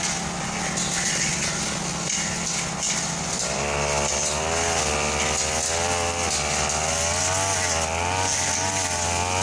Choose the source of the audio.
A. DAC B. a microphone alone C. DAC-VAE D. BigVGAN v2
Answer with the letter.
B